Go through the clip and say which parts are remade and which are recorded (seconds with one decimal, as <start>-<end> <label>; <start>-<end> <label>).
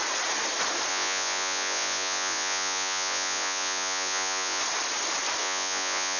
0.0-0.9 recorded; 0.9-4.6 remade; 4.6-5.4 recorded; 5.4-6.2 remade